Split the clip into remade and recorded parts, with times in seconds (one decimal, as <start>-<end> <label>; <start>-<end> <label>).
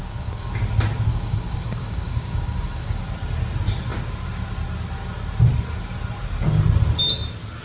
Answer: 0.0-0.6 remade; 0.6-1.1 recorded; 1.1-3.0 remade; 3.0-7.6 recorded